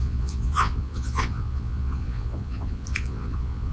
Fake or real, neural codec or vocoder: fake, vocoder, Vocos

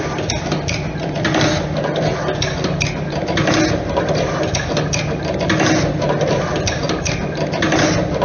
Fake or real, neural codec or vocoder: real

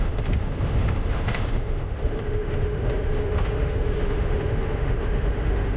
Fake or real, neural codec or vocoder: fake, autoencoder, DAC-VAE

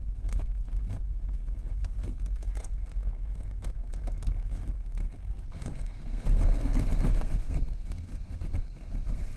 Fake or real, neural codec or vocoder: fake, codec, SNAC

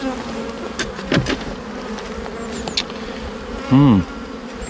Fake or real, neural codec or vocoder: real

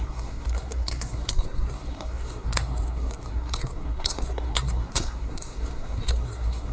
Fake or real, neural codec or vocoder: fake, codec, SNAC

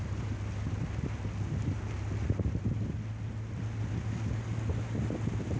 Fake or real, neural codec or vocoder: real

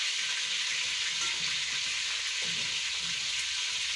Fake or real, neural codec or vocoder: real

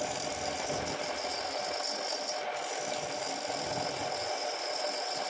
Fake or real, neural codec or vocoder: real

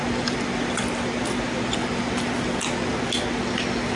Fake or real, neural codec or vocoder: real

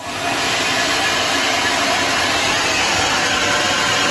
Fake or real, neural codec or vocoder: real